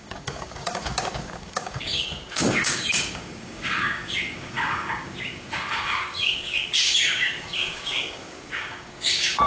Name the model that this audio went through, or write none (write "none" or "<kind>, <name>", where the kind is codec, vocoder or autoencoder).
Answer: codec, DAC